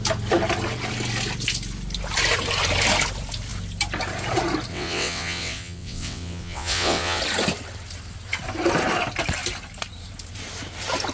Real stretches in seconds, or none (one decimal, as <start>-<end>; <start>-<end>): 0.0-4.7; 7.2-11.1